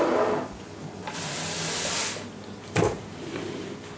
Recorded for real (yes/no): yes